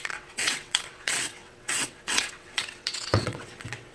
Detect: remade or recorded remade